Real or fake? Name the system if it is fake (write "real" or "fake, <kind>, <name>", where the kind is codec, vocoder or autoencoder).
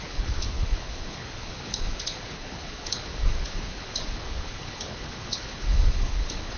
fake, codec, HILCodec